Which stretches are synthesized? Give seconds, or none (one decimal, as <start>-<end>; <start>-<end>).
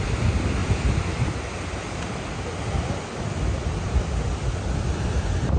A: none